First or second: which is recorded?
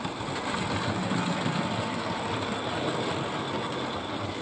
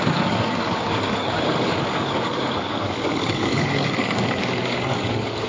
first